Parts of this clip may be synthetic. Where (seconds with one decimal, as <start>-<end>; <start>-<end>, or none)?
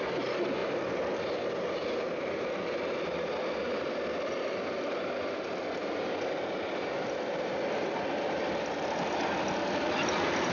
none